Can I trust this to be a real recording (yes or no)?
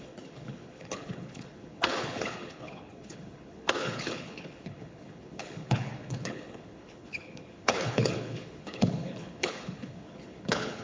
no